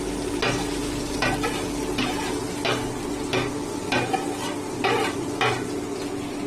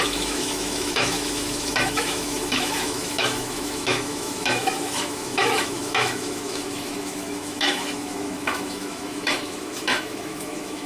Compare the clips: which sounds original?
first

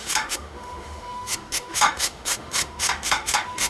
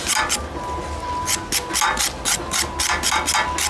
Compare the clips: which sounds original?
second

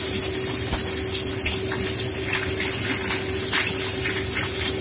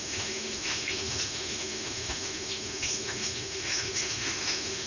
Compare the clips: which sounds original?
first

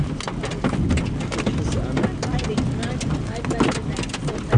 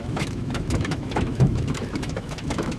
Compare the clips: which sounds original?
first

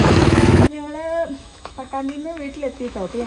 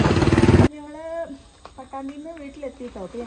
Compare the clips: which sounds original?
second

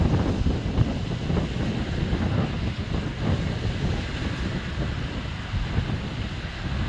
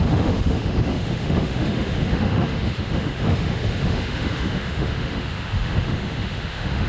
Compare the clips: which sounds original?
first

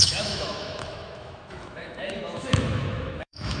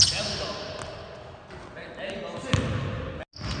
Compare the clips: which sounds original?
second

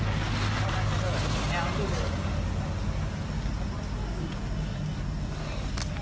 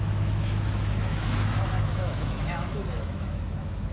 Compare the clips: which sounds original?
first